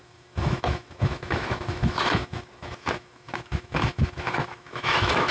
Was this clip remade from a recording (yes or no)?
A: yes